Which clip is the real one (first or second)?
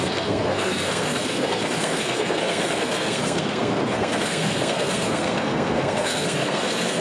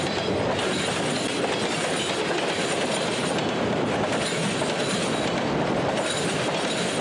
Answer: second